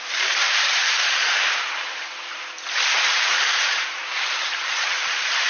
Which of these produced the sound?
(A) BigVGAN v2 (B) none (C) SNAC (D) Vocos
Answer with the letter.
A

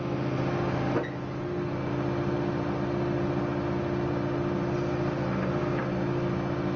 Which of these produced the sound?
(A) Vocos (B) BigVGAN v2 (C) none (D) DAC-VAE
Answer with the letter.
C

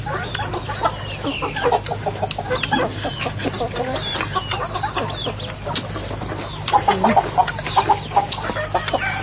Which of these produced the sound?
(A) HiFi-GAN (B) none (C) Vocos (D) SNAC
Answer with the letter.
B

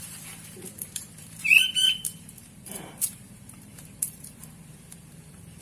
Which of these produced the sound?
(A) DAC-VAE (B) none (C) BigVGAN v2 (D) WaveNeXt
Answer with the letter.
C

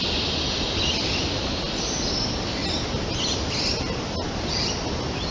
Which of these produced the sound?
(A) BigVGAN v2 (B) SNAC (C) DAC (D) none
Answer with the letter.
D